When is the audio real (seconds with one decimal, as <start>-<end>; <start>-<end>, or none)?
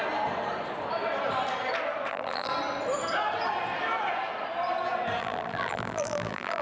0.0-2.1; 2.5-5.2